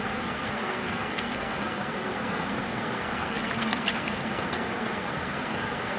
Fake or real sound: fake